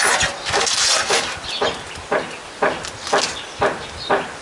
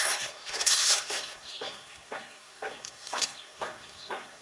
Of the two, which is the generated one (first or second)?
second